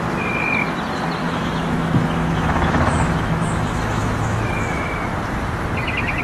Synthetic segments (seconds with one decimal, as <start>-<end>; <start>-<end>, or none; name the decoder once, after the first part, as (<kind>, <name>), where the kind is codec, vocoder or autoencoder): 1.2-4.9 (autoencoder, DAC-VAE)